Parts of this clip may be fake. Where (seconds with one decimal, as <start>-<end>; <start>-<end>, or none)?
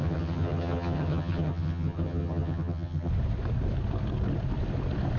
0.0-3.1